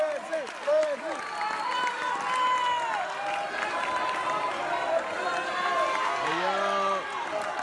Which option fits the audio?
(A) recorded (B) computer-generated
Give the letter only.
A